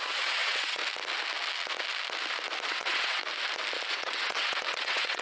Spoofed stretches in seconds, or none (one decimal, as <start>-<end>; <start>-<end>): 0.0-0.8; 2.7-3.2; 3.9-5.2